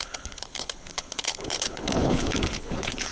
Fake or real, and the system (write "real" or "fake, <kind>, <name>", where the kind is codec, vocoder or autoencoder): fake, codec, HILCodec